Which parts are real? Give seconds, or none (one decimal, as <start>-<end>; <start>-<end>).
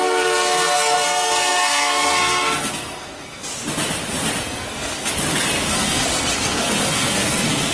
3.5-4.4; 5.1-5.7